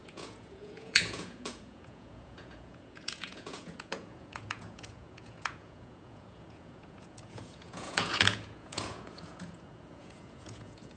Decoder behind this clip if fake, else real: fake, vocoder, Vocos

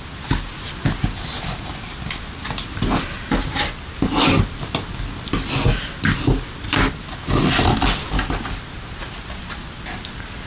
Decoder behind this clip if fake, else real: real